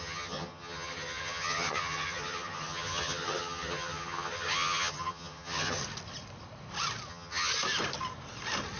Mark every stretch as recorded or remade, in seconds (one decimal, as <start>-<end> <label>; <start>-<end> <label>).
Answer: 0.0-5.8 remade; 5.8-7.1 recorded; 7.1-7.5 remade; 7.5-8.8 recorded